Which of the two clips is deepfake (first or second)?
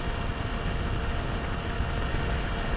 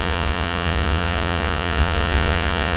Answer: second